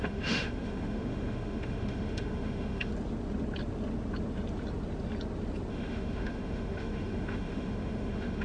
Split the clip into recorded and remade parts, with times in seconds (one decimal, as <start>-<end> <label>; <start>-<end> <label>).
0.0-2.9 remade; 2.9-5.7 recorded; 5.7-8.4 remade